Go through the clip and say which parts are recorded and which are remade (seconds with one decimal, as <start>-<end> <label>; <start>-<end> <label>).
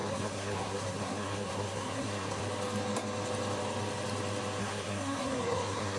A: 0.0-2.4 remade; 2.4-4.6 recorded; 4.6-6.0 remade